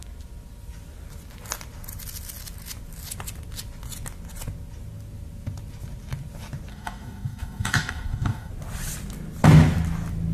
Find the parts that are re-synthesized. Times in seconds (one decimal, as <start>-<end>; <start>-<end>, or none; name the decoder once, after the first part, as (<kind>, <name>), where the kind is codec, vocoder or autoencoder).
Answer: 6.7-8.5 (codec, DAC)